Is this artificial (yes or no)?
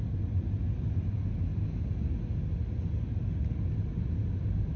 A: no